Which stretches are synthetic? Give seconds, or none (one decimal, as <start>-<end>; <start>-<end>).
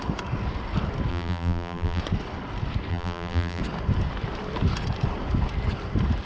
1.1-2.0; 2.9-3.6